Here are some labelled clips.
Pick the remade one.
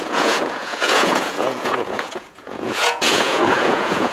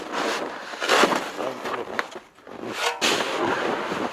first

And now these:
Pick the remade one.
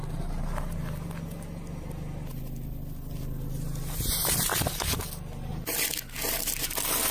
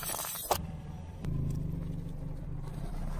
second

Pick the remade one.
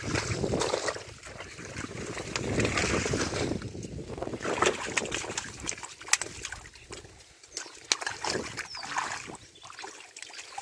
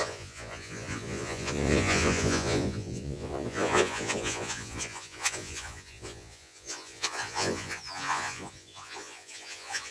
second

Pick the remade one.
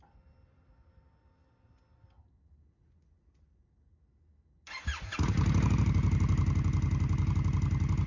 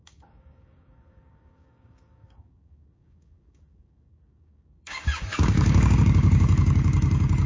second